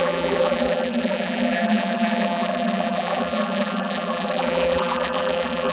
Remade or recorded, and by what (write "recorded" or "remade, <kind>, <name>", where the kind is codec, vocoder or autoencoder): remade, vocoder, BigVGAN v2